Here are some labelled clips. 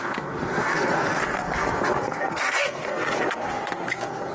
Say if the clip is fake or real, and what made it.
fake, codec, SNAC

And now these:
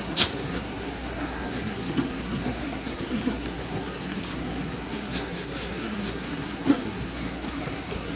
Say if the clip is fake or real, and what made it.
fake, codec, SNAC